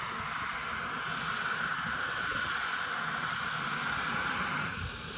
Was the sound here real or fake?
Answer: real